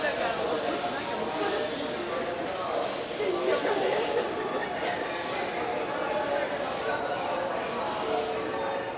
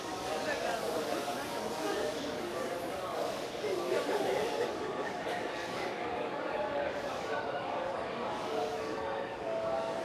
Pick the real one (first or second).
first